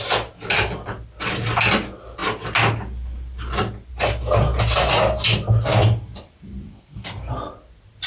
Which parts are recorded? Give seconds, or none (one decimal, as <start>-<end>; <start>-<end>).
0.0-6.7; 7.3-8.1